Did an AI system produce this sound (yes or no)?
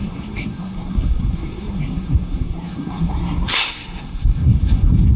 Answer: yes